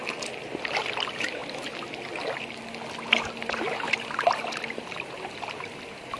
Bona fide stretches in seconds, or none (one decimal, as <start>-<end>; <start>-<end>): 0.0-6.2